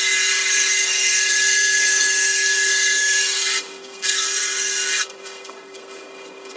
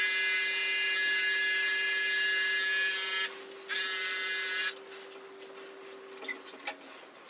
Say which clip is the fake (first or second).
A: first